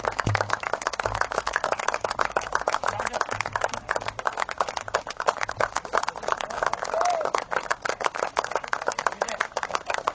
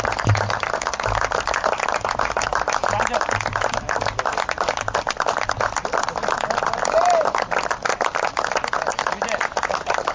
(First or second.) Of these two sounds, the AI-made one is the first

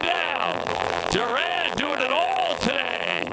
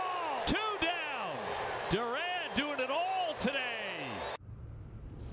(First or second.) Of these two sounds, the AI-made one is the first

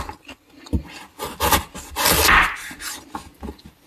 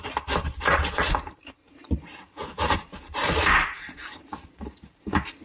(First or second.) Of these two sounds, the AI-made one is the second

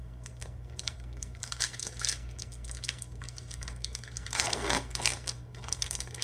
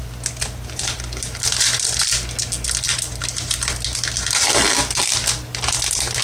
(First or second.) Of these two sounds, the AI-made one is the first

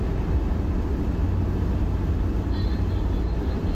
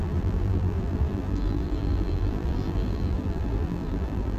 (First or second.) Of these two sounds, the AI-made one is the second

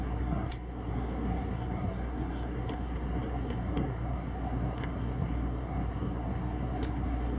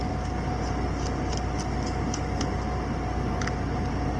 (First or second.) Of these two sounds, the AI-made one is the first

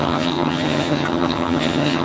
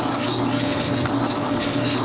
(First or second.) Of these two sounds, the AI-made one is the first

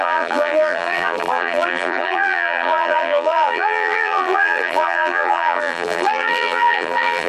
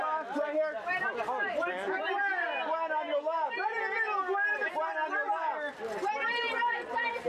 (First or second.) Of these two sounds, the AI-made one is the first